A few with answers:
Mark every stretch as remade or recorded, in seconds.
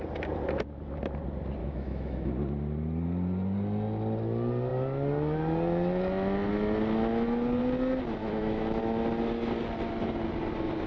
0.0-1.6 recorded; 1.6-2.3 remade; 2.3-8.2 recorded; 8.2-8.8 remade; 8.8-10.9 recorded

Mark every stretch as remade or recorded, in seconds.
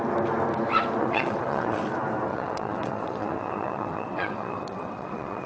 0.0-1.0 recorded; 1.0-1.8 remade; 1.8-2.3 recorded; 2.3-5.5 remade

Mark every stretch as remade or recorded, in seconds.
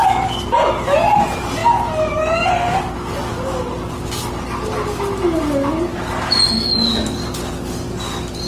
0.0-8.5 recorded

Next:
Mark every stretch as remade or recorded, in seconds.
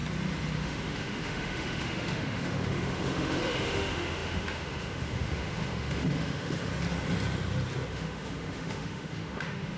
0.0-0.6 recorded; 0.6-6.7 remade; 6.7-7.9 recorded; 7.9-9.8 remade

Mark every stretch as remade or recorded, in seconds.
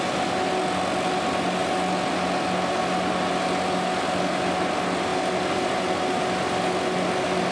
0.0-7.5 recorded